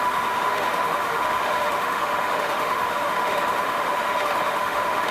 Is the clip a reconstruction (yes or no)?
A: yes